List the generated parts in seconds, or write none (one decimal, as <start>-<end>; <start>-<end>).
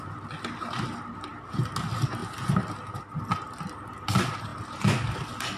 none